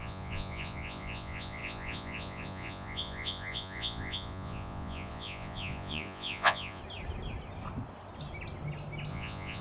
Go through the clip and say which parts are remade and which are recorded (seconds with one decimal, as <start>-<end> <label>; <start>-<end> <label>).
0.0-6.8 remade; 6.8-9.1 recorded; 9.1-9.6 remade

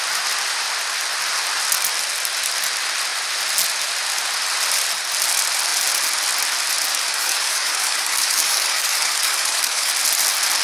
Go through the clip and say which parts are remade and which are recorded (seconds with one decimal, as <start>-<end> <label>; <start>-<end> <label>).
0.0-6.9 recorded; 6.9-9.9 remade; 9.9-10.6 recorded

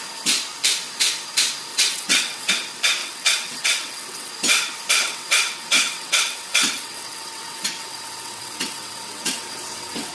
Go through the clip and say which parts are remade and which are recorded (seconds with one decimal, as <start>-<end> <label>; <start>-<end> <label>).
0.0-1.7 recorded; 1.7-2.5 remade; 2.5-3.0 recorded; 3.0-4.3 remade; 4.3-5.0 recorded; 5.0-10.1 remade

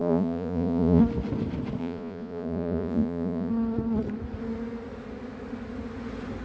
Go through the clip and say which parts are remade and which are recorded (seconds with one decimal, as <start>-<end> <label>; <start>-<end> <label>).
0.0-1.0 remade; 1.0-1.8 recorded; 1.8-3.5 remade; 3.5-6.4 recorded